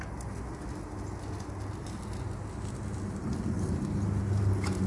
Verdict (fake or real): real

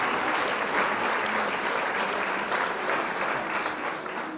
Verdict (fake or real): real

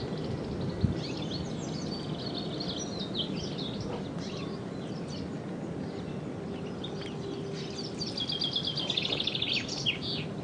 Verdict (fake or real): real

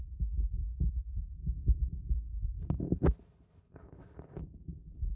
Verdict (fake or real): real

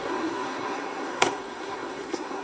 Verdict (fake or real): fake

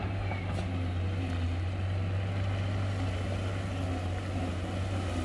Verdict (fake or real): real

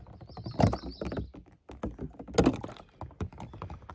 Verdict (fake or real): real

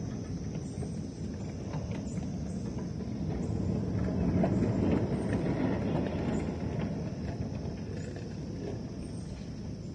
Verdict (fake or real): real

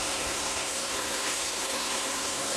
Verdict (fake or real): fake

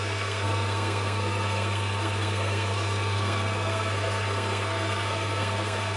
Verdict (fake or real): fake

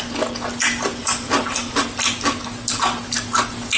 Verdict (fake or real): real